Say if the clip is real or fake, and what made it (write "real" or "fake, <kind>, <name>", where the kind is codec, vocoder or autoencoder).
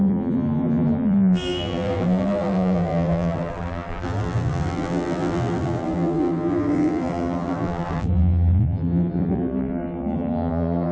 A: fake, vocoder, BigVGAN v2